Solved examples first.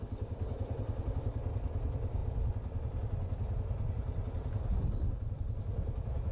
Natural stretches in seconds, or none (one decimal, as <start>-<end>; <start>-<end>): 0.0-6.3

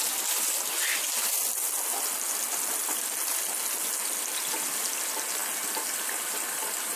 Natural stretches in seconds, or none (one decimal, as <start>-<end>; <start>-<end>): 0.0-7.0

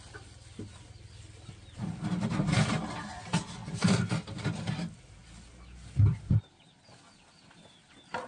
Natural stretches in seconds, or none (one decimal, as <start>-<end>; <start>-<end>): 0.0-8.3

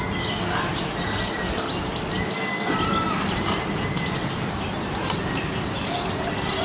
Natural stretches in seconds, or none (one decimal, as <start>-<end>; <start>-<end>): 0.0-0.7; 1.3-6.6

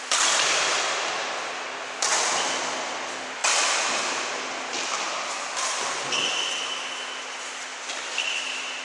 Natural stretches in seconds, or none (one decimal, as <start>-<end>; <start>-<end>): 0.0-8.8

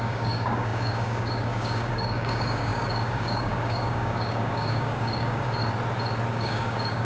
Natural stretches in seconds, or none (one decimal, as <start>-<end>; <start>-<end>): 5.6-6.3

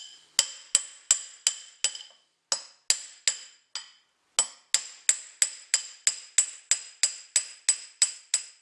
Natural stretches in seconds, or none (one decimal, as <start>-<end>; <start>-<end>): 0.0-8.6